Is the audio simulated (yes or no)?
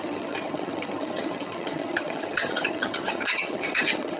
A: yes